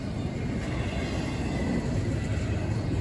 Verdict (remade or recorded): recorded